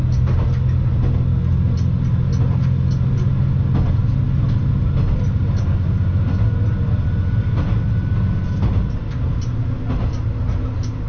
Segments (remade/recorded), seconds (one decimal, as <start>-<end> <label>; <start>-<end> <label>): 0.0-11.1 recorded